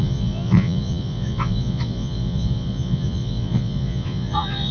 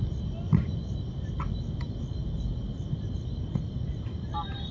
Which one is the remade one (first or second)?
first